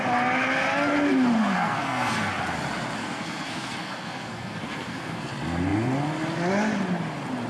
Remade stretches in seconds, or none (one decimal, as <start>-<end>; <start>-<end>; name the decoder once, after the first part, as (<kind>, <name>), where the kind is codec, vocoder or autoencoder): 1.4-2.3 (codec, SNAC); 3.0-5.3